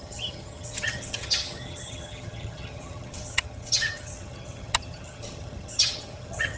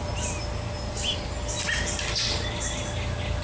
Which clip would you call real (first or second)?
second